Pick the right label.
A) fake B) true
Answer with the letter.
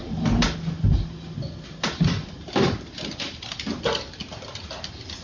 B